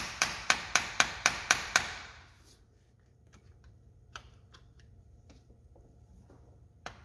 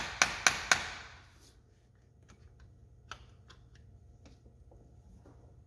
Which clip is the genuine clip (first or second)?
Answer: second